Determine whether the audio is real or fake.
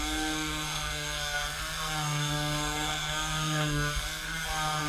fake